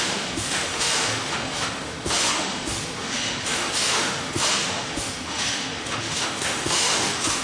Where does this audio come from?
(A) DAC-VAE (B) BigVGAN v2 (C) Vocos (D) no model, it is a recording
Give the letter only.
A